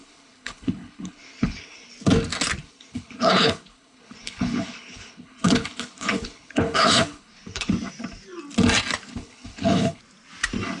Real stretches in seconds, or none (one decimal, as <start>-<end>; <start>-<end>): 1.9-2.6; 7.7-9.1; 10.0-10.8